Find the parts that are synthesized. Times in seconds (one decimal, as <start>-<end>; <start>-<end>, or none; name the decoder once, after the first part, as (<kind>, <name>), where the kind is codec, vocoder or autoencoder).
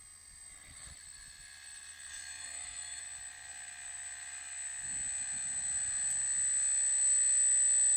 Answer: 2.1-3.0 (autoencoder, DAC-VAE)